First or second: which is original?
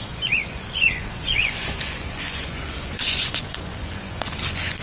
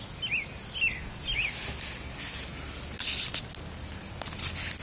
second